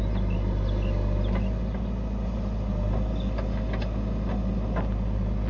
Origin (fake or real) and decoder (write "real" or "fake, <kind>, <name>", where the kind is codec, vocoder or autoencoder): real